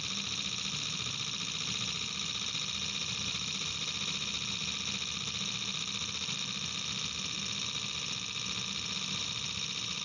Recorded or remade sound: recorded